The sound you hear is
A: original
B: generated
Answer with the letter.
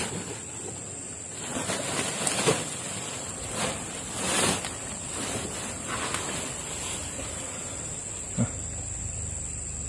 A